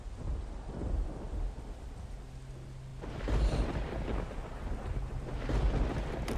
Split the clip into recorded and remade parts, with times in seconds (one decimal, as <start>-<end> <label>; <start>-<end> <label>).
0.0-2.9 recorded; 2.9-5.4 remade; 5.4-6.4 recorded